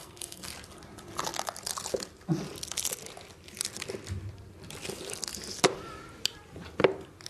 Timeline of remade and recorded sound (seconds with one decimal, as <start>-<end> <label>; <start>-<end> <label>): 0.0-0.5 remade; 0.5-7.3 recorded

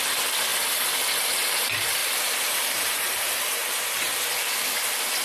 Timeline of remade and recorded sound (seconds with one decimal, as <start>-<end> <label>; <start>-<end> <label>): 0.0-2.0 recorded; 2.0-4.3 remade; 4.3-5.2 recorded

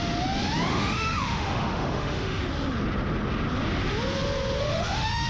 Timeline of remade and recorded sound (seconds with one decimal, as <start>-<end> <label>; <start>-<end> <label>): 0.0-0.7 recorded; 0.7-2.4 remade; 2.4-4.6 recorded; 4.6-5.3 remade

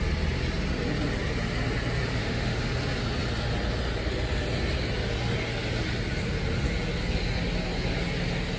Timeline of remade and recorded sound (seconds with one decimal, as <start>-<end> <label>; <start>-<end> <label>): 0.0-2.2 recorded; 2.2-2.7 remade; 2.7-8.6 recorded

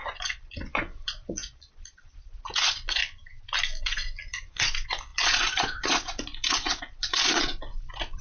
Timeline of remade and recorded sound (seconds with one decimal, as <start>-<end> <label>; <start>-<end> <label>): 0.0-3.0 remade; 3.0-3.8 recorded; 3.8-8.2 remade

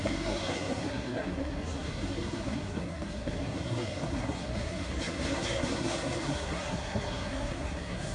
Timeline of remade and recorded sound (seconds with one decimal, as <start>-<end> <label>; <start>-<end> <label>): 0.0-8.1 remade

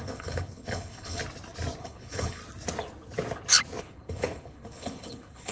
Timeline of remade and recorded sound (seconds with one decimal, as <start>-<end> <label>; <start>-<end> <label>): 0.0-1.2 remade; 1.2-1.8 recorded; 1.8-2.4 remade; 2.4-3.8 recorded; 3.8-5.5 remade

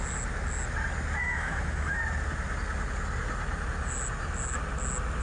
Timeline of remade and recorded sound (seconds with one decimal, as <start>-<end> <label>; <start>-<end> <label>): 0.0-1.2 recorded; 1.2-2.0 remade; 2.0-5.2 recorded